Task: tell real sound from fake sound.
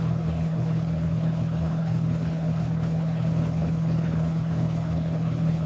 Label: fake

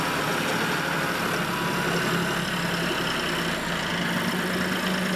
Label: real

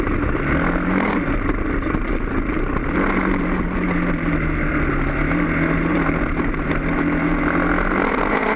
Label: real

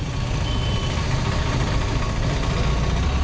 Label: real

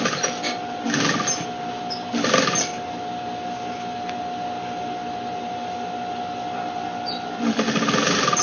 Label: real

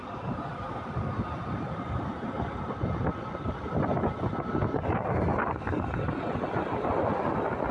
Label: real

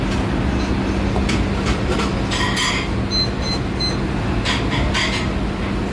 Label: real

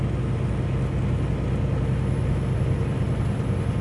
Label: real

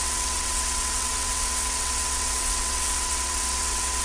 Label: fake